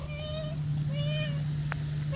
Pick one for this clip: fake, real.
real